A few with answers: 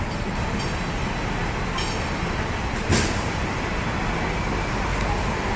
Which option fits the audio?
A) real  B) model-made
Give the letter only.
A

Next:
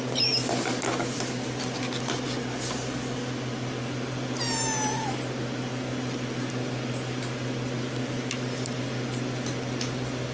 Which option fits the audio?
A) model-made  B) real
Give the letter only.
B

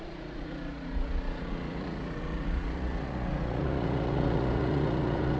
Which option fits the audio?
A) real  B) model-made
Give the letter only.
B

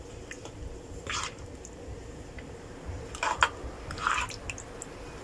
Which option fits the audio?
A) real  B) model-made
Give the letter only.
A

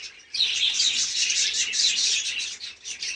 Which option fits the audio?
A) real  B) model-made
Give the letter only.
A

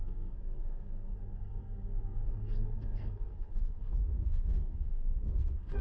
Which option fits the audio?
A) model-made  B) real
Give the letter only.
A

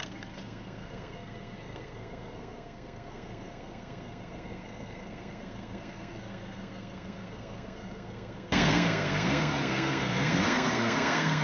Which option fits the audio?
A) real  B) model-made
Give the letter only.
B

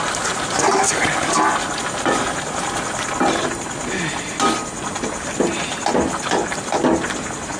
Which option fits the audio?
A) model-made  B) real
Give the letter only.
B